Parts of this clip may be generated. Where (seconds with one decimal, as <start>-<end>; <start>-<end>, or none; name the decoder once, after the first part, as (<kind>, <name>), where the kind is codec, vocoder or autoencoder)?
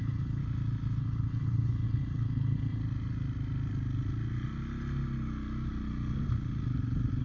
0.0-0.4 (codec, HILCodec); 1.0-2.8